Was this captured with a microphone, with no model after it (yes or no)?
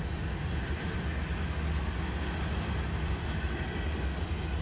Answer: yes